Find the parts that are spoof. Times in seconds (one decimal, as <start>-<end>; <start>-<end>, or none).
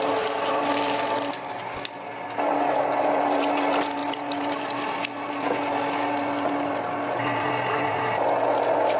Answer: none